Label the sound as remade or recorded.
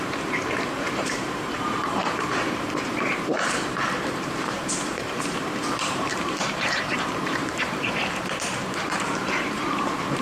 remade